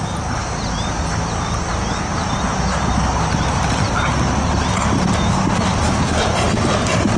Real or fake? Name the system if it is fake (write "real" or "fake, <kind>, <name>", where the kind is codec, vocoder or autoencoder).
real